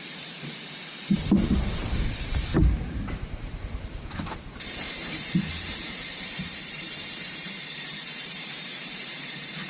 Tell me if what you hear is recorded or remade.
remade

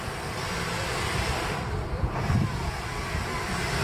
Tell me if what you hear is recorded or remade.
remade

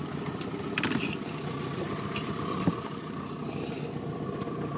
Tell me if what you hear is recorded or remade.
recorded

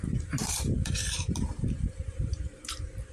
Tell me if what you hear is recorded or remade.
remade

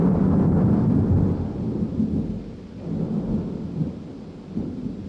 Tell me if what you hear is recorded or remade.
recorded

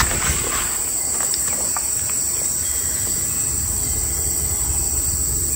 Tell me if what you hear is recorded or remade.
recorded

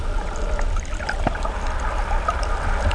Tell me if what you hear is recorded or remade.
recorded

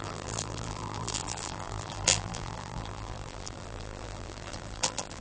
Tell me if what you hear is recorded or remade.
remade